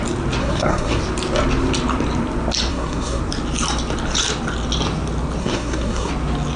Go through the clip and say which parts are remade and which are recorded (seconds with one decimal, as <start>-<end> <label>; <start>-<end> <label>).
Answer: 0.0-0.4 recorded; 0.4-1.0 remade; 1.0-2.7 recorded; 2.7-3.2 remade; 3.2-5.4 recorded; 5.4-6.1 remade; 6.1-6.6 recorded